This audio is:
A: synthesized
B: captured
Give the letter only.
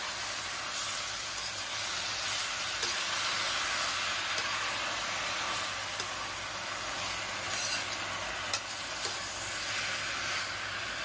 B